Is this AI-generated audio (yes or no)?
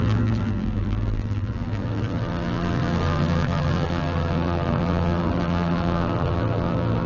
yes